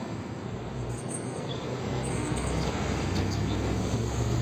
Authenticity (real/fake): fake